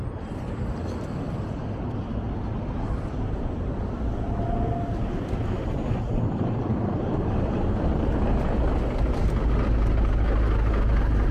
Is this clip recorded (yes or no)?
yes